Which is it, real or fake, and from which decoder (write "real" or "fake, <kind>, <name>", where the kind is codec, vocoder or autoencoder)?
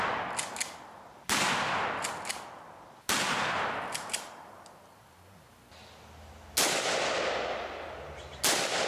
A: real